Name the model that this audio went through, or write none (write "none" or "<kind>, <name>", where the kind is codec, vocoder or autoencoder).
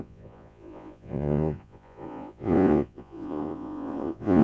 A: vocoder, Vocos